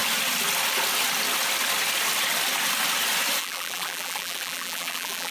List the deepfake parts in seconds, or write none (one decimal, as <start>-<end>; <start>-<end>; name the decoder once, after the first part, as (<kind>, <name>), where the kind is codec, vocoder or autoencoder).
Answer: 3.4-5.3 (vocoder, BigVGAN v2)